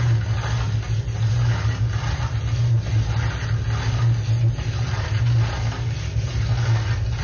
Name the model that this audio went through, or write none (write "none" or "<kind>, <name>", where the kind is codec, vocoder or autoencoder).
none